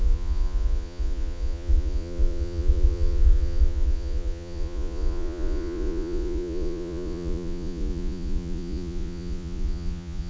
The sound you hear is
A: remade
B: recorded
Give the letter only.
A